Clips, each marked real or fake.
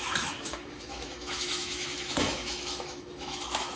fake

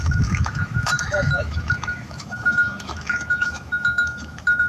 fake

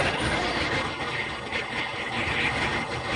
real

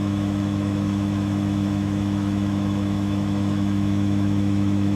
fake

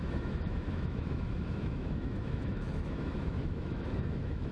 fake